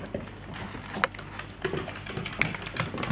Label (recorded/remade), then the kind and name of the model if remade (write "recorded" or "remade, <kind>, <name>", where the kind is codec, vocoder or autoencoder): recorded